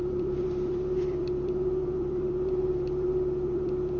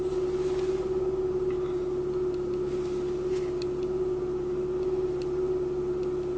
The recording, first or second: second